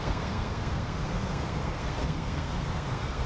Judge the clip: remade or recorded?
remade